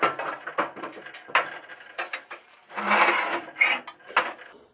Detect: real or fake real